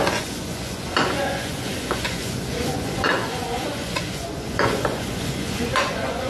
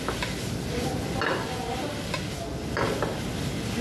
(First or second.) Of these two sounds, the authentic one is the second